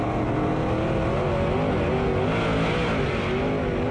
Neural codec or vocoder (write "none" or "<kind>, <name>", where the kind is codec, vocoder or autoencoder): none